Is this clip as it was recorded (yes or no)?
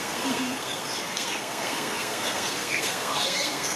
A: no